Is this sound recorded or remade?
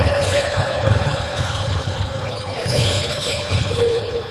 remade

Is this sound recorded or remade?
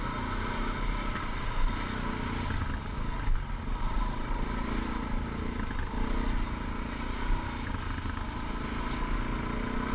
recorded